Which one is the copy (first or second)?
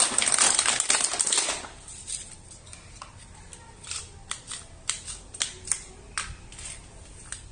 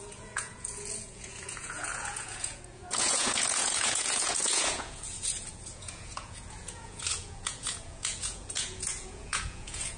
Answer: second